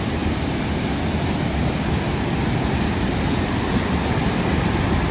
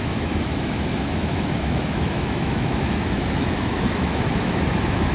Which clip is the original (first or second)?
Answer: first